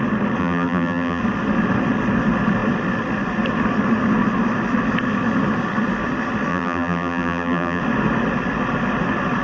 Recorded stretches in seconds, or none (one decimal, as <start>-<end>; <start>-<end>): 0.0-0.4; 1.2-6.5; 7.8-9.4

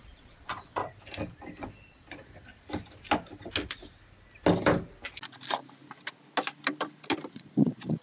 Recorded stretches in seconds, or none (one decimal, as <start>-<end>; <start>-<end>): 0.8-1.6; 2.5-7.3